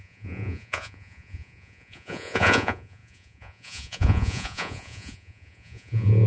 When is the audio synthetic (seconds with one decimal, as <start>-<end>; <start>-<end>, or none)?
0.0-6.3

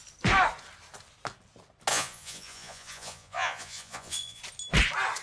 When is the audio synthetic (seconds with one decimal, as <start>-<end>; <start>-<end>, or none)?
1.9-4.4

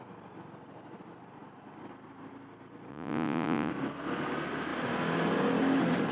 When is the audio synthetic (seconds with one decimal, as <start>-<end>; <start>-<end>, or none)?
2.9-3.7

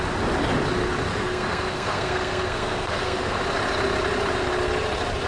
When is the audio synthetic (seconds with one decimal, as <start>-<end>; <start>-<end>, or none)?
1.1-3.4

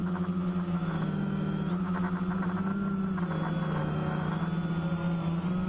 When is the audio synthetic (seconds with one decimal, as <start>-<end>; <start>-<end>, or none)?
0.0-1.7; 3.8-4.4

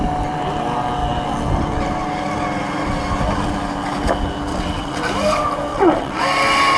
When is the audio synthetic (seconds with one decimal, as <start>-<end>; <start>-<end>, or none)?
4.5-5.1; 5.7-6.2

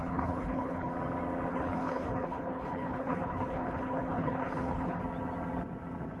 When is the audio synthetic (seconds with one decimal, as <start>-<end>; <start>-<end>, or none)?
0.0-0.9; 1.5-5.0

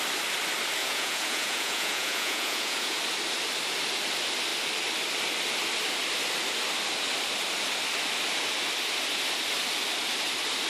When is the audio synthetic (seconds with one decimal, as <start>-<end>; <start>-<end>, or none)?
0.8-3.0